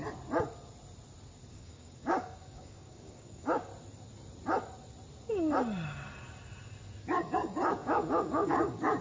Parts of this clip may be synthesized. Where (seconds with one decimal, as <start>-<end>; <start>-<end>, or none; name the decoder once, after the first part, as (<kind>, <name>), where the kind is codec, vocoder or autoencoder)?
1.5-3.7 (codec, DAC); 7.0-9.0